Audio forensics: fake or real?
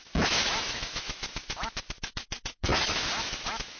fake